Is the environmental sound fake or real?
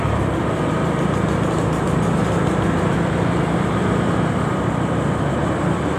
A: fake